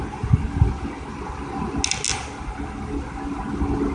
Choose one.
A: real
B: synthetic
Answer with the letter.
A